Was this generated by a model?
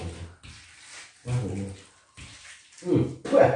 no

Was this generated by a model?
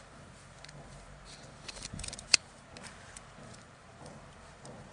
yes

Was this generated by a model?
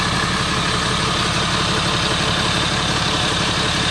no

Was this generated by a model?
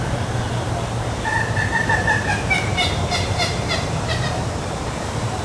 yes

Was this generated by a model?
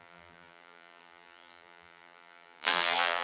yes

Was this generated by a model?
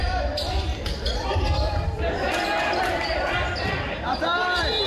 yes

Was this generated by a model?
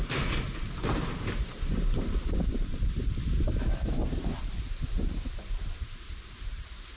yes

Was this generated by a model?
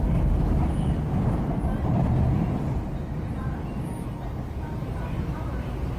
no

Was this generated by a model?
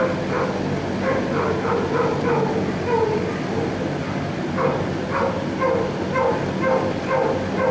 no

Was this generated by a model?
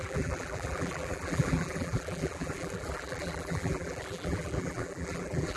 yes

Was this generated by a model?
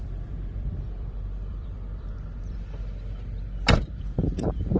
yes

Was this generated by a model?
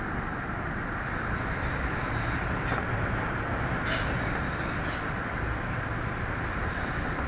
no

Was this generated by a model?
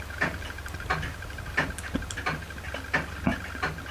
no